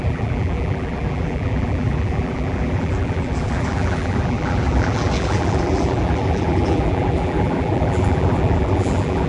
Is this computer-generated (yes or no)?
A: yes